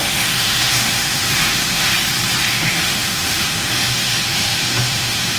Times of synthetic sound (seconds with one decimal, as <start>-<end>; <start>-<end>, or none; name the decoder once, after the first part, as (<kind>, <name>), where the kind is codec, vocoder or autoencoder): 0.0-1.9 (autoencoder, DAC-VAE); 2.5-5.4